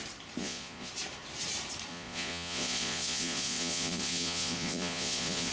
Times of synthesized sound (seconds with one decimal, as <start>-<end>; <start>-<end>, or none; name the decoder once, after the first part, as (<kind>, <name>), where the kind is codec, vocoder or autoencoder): 0.4-0.9 (vocoder, Vocos); 1.9-5.5